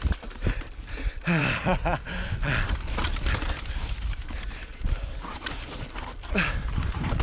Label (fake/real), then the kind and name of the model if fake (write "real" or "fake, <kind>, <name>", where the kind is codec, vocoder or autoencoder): fake, vocoder, BigVGAN v2